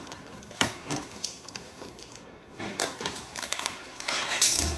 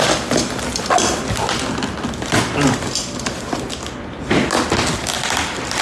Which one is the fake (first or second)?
first